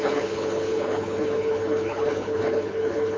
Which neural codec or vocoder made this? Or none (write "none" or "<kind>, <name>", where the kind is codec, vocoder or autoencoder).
codec, HILCodec